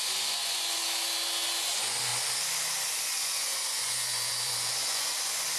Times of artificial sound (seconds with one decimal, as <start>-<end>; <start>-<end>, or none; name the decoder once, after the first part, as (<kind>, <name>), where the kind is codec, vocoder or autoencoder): 0.0-0.8 (vocoder, Vocos); 1.6-2.1; 3.0-5.6